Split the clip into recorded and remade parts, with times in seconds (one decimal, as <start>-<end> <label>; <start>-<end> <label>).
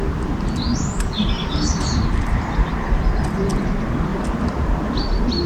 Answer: 0.0-4.1 recorded; 4.1-4.9 remade; 4.9-5.5 recorded